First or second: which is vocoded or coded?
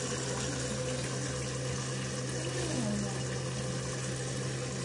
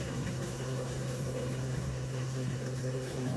second